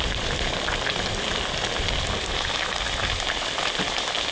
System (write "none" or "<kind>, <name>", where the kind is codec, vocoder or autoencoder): none